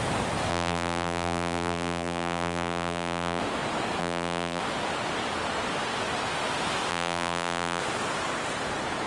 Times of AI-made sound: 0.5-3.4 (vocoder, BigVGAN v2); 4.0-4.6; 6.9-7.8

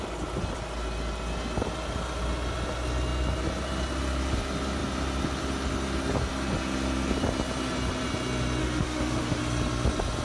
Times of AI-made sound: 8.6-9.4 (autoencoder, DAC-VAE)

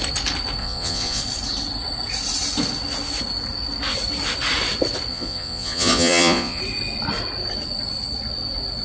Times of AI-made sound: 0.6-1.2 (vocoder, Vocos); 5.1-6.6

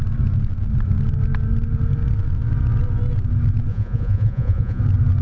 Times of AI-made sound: 3.7-4.8 (vocoder, Vocos)

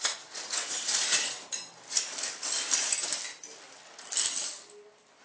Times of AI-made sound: 0.0-1.3 (vocoder, Vocos)